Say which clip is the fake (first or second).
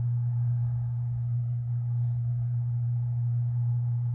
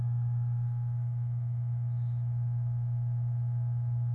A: first